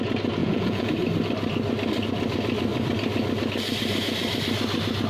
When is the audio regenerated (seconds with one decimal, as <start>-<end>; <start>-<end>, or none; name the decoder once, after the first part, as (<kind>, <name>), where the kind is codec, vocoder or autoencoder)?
0.4-0.9 (vocoder, Vocos)